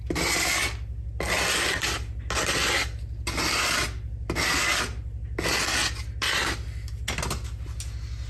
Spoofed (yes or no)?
no